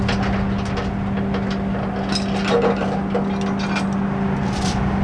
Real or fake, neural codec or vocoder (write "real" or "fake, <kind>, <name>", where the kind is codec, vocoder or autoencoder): real